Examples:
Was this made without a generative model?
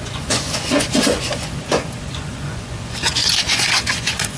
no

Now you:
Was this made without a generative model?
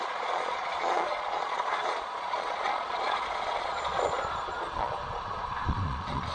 no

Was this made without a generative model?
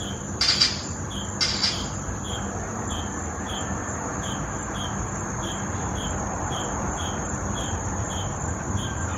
yes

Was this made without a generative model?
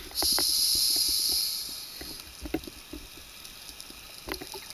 yes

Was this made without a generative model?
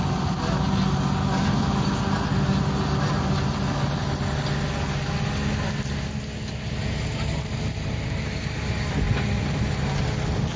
yes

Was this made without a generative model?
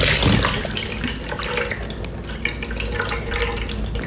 yes